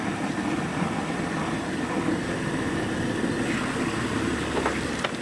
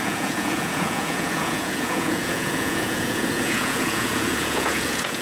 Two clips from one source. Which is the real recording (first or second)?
first